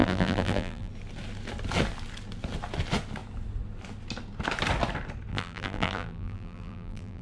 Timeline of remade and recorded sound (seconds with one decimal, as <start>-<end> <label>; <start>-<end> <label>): 0.0-0.9 remade; 0.9-5.3 recorded; 5.3-7.2 remade